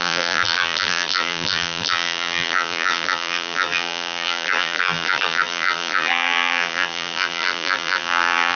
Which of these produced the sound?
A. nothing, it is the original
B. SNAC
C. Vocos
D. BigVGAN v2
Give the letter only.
D